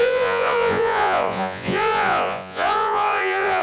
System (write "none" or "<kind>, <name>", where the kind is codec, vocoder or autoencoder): vocoder, Vocos